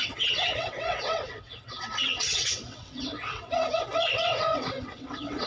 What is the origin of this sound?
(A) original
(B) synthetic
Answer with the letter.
B